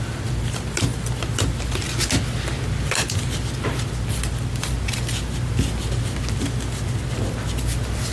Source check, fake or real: real